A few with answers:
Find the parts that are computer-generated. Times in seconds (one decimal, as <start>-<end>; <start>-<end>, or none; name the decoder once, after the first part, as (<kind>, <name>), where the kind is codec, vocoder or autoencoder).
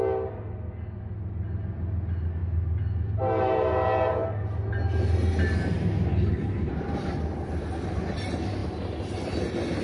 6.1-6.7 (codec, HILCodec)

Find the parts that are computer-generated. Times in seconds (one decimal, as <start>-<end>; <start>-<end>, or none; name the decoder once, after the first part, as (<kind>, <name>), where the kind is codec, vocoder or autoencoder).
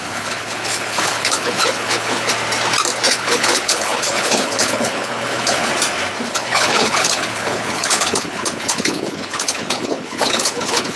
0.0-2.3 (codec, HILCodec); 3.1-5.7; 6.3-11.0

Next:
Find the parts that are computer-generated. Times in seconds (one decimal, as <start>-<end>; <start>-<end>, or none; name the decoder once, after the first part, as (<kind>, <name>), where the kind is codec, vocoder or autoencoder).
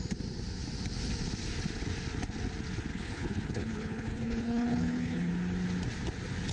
2.9-5.3 (codec, HILCodec)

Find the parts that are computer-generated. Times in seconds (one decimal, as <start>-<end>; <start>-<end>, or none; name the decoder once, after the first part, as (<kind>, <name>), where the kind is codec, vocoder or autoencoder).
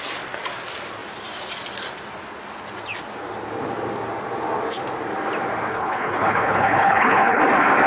5.7-7.4 (codec, HILCodec)